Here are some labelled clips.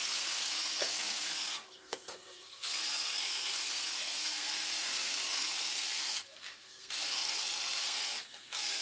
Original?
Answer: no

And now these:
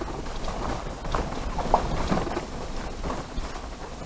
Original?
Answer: yes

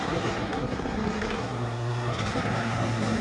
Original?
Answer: no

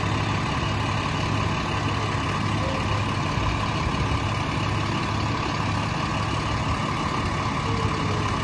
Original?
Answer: yes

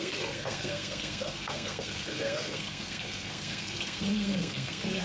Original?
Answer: no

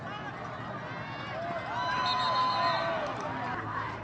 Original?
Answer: yes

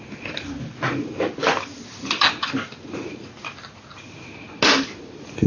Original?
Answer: yes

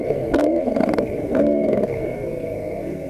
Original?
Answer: no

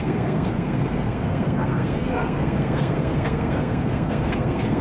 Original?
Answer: no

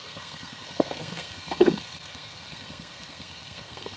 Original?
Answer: no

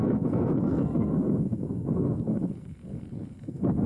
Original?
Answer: no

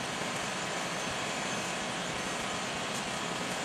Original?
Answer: yes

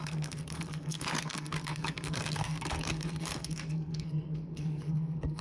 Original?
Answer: no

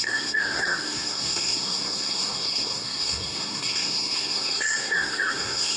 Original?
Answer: no